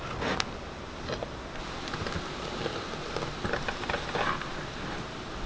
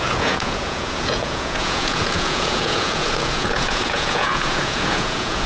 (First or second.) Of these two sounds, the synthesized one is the second